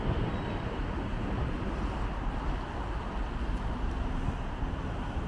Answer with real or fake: real